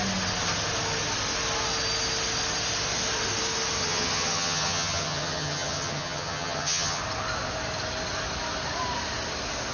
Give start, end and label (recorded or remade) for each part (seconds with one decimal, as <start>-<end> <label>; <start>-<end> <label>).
0.0-3.8 recorded; 3.8-7.0 remade; 7.0-9.7 recorded